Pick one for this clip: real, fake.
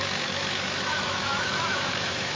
fake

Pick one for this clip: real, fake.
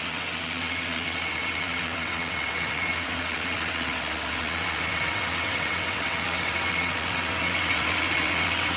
fake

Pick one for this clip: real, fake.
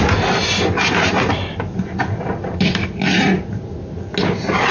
real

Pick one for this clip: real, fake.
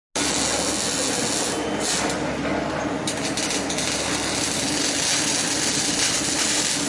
real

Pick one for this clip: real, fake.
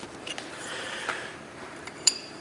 fake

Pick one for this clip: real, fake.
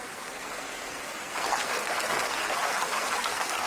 fake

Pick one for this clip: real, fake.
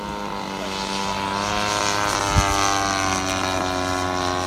real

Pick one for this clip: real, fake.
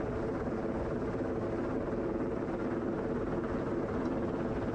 real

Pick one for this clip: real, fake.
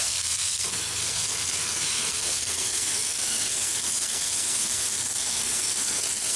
fake